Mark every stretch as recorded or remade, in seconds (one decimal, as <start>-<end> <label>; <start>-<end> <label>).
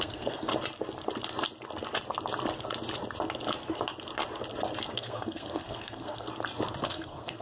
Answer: 0.0-0.5 remade; 0.5-4.9 recorded; 4.9-6.3 remade; 6.3-6.8 recorded; 6.8-7.4 remade